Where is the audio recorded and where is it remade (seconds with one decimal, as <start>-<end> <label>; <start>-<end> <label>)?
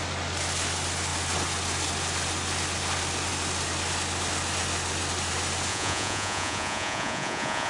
0.0-5.7 recorded; 5.7-7.7 remade